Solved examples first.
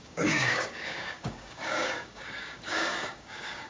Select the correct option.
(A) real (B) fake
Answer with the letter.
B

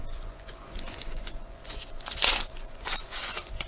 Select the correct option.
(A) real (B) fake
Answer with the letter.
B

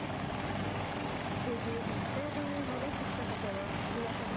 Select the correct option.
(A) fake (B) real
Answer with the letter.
B